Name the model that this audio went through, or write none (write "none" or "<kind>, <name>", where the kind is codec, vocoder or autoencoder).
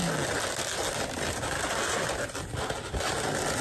none